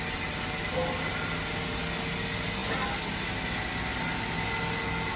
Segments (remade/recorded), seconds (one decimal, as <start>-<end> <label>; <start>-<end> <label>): 0.0-5.2 recorded